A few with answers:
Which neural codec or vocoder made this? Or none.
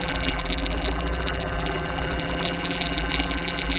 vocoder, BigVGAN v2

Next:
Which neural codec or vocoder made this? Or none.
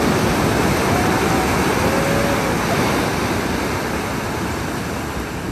none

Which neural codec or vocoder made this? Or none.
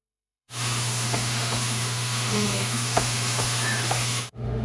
autoencoder, DAC-VAE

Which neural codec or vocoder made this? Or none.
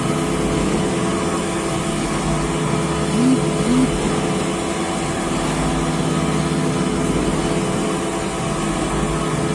none